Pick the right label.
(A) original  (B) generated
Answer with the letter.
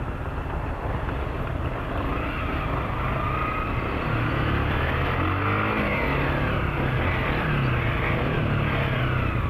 A